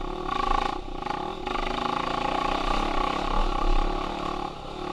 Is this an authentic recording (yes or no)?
yes